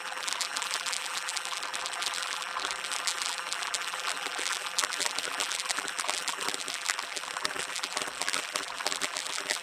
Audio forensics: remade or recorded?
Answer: remade